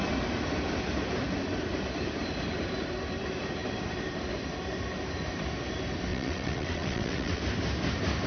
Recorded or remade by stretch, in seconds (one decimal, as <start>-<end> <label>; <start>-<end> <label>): 0.0-6.1 recorded; 6.1-7.4 remade; 7.4-8.3 recorded